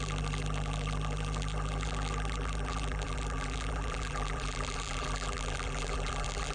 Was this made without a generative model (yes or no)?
no